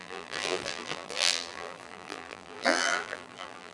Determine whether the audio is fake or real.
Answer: fake